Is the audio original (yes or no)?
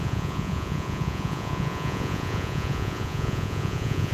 no